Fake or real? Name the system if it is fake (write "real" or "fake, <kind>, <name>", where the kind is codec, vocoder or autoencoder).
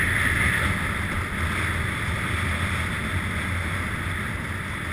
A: real